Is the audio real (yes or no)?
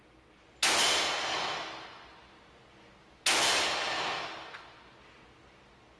yes